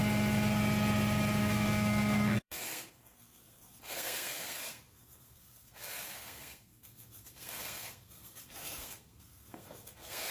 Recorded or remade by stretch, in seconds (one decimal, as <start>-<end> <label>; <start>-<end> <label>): 0.0-1.4 recorded; 1.4-10.3 remade